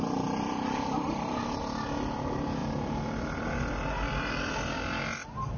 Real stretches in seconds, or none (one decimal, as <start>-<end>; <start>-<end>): 1.6-2.6; 4.5-5.6